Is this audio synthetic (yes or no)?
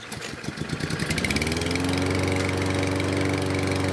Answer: no